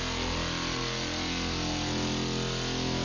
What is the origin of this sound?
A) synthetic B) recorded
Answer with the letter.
B